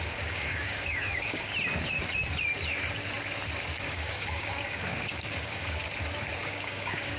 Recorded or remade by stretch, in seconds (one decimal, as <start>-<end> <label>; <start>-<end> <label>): 0.0-1.5 remade; 1.5-3.8 recorded; 3.8-5.8 remade; 5.8-6.4 recorded; 6.4-7.2 remade